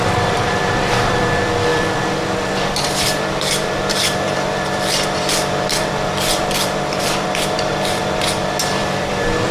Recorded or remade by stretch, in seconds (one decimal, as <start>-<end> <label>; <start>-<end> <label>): 0.0-9.5 remade